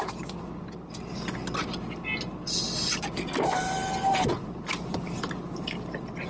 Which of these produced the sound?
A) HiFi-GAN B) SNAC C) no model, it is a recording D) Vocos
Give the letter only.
C